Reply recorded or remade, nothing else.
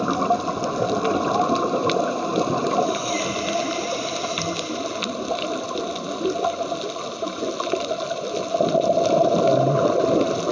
recorded